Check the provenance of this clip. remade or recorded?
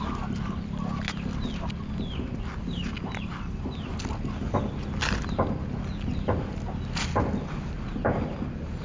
recorded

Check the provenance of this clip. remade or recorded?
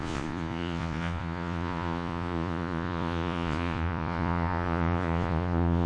remade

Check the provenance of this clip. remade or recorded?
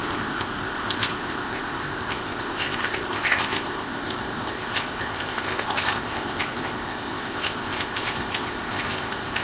remade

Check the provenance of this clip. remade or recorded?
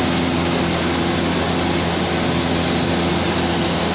recorded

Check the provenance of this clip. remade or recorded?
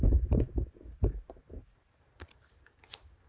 recorded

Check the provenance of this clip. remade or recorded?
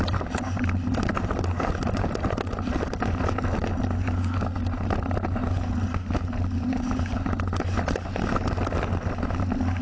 recorded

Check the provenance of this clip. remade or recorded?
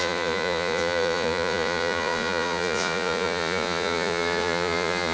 remade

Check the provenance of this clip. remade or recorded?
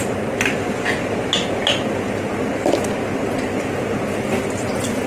recorded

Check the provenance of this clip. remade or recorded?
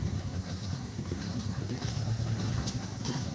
remade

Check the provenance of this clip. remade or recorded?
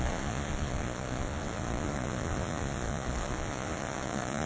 remade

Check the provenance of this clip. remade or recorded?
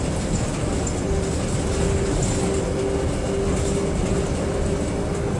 recorded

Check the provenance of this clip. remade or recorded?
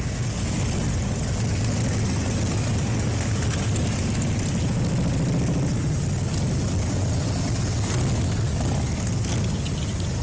recorded